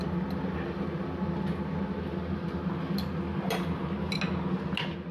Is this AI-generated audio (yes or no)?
no